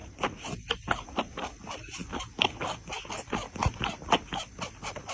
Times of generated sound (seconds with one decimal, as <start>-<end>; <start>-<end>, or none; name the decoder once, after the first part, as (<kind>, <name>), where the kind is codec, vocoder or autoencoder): none